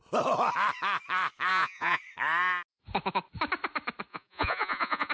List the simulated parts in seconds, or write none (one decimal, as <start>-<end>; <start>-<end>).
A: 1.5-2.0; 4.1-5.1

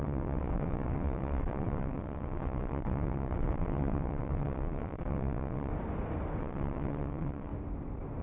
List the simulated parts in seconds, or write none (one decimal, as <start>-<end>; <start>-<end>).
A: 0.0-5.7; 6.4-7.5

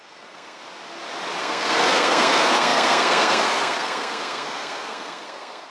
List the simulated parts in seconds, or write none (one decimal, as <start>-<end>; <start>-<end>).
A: 0.0-0.6; 1.4-5.7

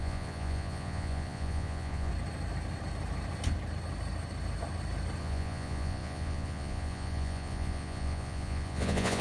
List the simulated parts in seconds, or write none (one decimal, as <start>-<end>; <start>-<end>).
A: 0.0-2.1; 5.2-9.2

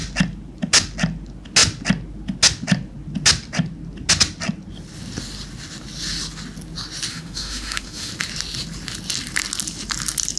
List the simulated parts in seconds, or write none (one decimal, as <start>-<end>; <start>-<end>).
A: 7.1-8.1

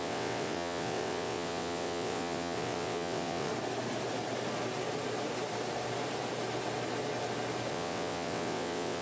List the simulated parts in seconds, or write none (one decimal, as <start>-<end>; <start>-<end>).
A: 0.0-3.5; 7.7-9.0

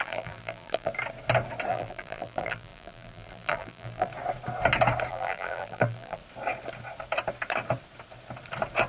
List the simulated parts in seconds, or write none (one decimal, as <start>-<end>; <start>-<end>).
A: 0.0-0.9; 1.7-4.1; 5.1-6.2

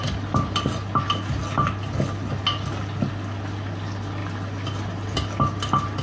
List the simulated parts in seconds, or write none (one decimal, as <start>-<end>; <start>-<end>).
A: none